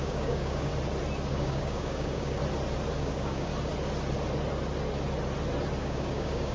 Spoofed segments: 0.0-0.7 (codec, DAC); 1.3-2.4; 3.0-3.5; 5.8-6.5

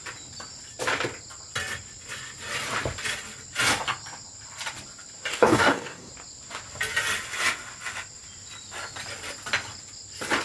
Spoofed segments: 5.3-6.1 (codec, DAC)

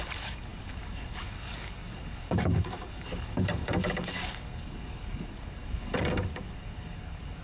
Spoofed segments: 0.0-7.4 (codec, DAC)

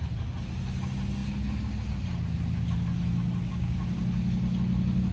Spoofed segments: 3.5-4.0 (codec, DAC)

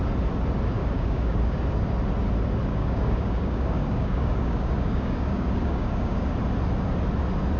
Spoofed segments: 0.8-1.6 (codec, DAC); 2.7-6.3

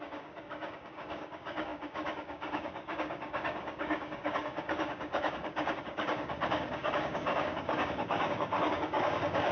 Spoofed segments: 0.0-9.5 (codec, DAC)